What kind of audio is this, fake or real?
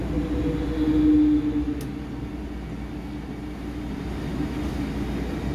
real